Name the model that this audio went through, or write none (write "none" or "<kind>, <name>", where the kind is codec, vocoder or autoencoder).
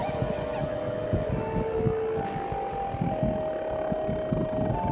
none